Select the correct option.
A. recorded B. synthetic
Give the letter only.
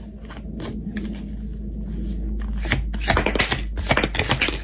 A